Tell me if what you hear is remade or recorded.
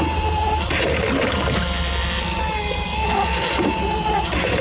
recorded